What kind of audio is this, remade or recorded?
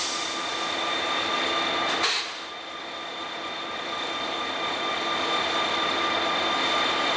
recorded